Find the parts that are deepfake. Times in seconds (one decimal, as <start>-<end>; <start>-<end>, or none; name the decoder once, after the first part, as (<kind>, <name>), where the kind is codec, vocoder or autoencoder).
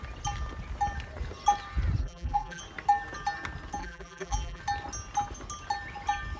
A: 2.0-2.6 (vocoder, BigVGAN v2); 3.8-4.6